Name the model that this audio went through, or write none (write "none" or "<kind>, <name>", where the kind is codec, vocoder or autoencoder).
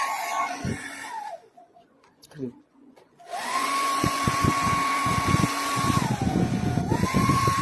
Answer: vocoder, Vocos